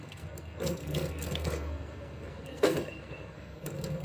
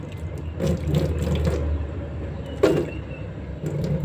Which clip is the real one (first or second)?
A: second